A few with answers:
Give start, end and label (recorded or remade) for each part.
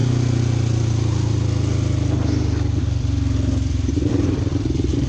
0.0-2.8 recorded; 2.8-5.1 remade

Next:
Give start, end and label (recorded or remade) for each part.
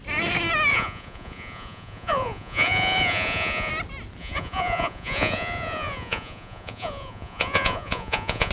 0.0-0.7 recorded; 0.7-3.7 remade; 3.7-4.2 recorded; 4.2-8.5 remade